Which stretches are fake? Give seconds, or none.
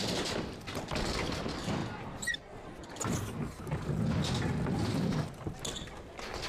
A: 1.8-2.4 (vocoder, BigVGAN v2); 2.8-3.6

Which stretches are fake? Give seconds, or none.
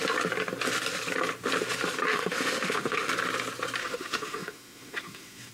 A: 2.1-3.1 (autoencoder, DAC-VAE); 3.8-5.5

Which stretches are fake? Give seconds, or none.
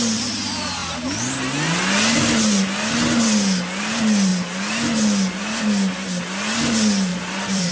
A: 7.1-7.7 (vocoder, BigVGAN v2)